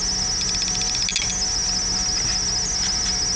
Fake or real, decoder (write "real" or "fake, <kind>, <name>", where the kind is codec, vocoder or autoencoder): real